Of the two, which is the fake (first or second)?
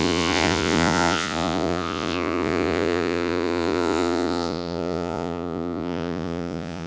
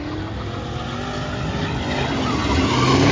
first